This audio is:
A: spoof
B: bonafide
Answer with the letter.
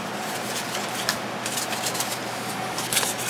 B